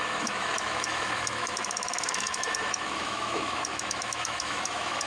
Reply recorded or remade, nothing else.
remade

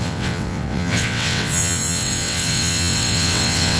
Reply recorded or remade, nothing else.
remade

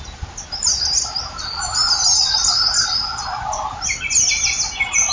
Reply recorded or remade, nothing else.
recorded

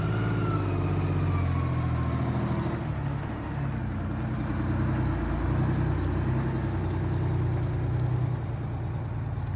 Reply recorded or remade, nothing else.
recorded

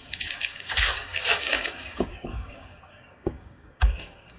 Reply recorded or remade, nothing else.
remade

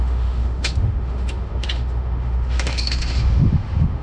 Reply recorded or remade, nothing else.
remade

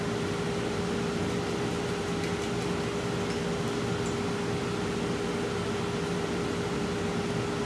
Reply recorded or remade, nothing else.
recorded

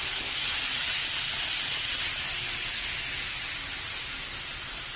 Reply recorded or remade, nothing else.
recorded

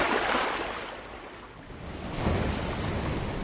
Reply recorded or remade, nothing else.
recorded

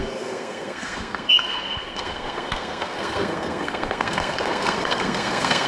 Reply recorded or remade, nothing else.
remade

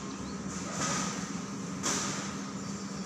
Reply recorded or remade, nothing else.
recorded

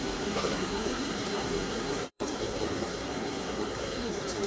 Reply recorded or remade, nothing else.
remade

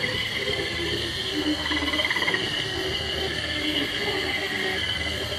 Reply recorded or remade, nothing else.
remade